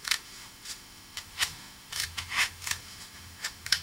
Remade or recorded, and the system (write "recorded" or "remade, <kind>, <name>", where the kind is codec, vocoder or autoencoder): remade, autoencoder, DAC-VAE